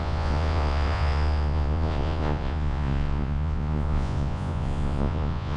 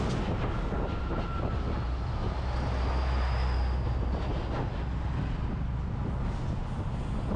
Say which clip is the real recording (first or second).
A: second